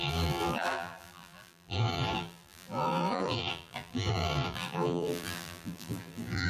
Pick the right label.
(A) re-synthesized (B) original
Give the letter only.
A